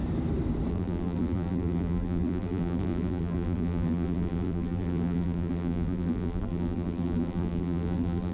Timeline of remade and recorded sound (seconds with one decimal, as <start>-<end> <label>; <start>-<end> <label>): 0.0-0.7 recorded; 0.7-8.3 remade